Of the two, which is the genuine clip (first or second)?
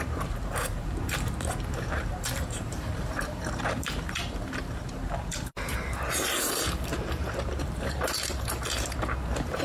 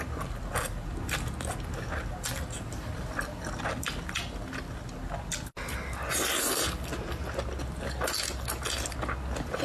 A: second